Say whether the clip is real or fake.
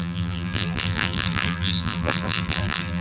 fake